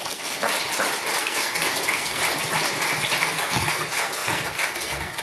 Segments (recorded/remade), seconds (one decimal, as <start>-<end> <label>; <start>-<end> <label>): 0.0-0.5 remade; 0.5-1.2 recorded; 1.2-2.2 remade; 2.2-3.2 recorded; 3.2-5.2 remade